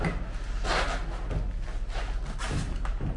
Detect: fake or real real